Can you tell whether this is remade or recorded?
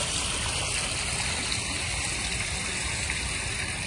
recorded